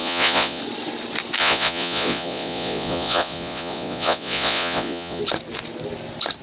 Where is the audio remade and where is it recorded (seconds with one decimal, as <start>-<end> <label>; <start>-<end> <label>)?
0.0-0.6 remade; 0.6-1.4 recorded; 1.4-5.2 remade; 5.2-6.4 recorded